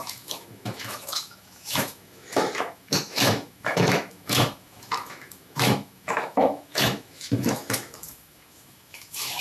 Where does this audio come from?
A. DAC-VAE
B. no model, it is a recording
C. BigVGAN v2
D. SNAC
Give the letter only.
A